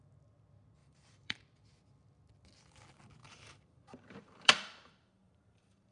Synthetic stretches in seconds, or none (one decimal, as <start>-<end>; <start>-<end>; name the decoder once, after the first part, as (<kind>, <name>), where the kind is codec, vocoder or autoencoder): 0.8-1.4 (vocoder, BigVGAN v2); 3.2-5.9